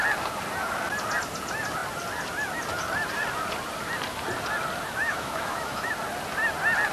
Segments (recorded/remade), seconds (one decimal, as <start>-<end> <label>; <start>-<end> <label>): 0.0-5.0 recorded; 5.0-5.9 remade; 5.9-6.9 recorded